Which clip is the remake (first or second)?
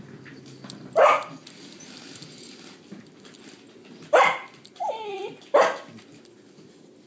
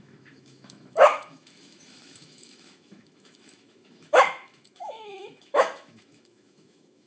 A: second